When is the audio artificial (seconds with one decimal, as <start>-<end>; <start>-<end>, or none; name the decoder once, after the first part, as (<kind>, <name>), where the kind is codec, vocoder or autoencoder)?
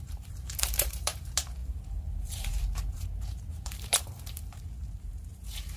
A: 0.0-5.8 (vocoder, BigVGAN v2)